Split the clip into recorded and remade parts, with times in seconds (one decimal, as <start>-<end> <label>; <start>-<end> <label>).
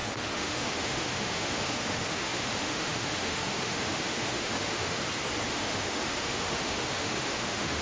0.0-5.0 remade; 5.0-5.5 recorded; 5.5-7.8 remade